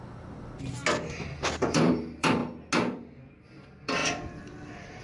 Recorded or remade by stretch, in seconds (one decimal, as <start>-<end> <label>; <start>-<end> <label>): 0.0-0.8 remade; 0.8-1.6 recorded; 1.6-2.4 remade; 2.4-3.0 recorded; 3.0-4.0 remade; 4.0-4.6 recorded; 4.6-5.0 remade